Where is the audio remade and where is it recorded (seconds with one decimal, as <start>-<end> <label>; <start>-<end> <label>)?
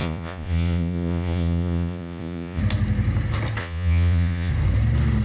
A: 0.0-2.6 remade; 2.6-3.6 recorded; 3.6-4.5 remade; 4.5-5.2 recorded